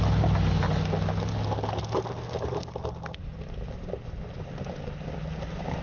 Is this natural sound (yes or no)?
yes